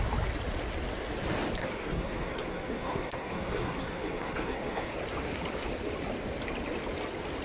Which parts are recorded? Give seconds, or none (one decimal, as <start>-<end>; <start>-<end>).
0.0-1.6; 4.9-7.4